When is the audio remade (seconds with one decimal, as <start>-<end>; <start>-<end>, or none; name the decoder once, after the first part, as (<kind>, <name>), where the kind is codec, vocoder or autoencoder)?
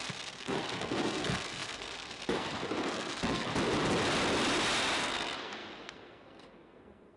0.0-3.5 (codec, SNAC); 5.0-7.2